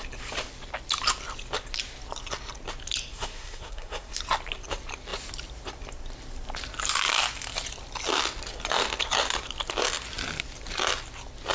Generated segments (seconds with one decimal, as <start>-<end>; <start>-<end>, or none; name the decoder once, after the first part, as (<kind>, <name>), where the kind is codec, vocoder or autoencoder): 3.1-4.2 (codec, SNAC)